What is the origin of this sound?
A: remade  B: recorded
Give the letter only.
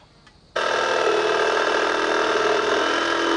B